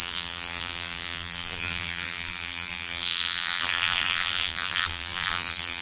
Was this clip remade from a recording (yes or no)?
yes